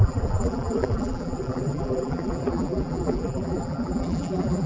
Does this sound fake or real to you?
fake